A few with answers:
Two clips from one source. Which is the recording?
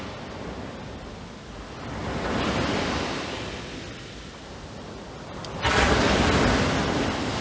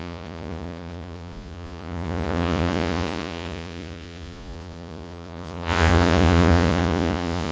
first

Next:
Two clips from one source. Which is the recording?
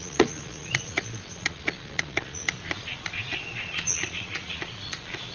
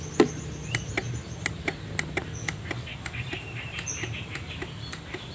second